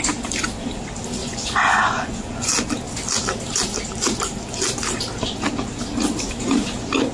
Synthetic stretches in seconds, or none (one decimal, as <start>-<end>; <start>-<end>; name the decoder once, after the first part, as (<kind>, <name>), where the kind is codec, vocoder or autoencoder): 1.2-2.5 (vocoder, Vocos)

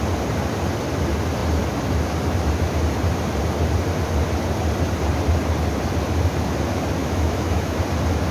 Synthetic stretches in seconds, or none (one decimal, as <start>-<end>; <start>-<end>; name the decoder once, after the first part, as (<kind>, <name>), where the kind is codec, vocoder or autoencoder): 7.0-7.8 (autoencoder, DAC-VAE)

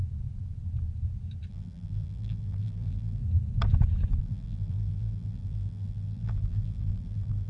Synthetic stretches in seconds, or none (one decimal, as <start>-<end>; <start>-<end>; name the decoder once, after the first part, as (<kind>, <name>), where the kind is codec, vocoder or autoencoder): 1.5-3.2 (vocoder, BigVGAN v2); 4.2-7.5

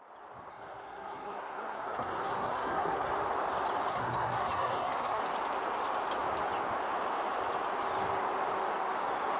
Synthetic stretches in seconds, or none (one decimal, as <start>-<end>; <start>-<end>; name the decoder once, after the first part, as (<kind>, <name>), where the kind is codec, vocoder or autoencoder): 0.5-3.1 (codec, SNAC); 3.9-5.2